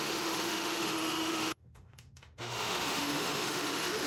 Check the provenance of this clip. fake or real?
fake